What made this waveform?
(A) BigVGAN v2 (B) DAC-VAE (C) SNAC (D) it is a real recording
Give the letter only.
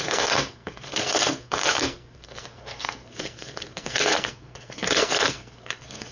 C